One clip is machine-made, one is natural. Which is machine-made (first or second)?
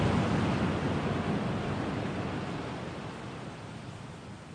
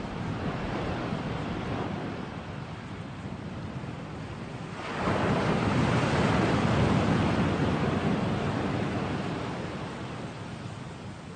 second